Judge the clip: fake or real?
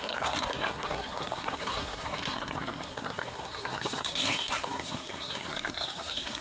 fake